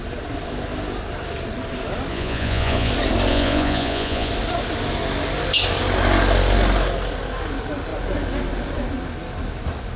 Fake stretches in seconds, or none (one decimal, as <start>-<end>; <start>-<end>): 2.1-2.9; 3.3-4.3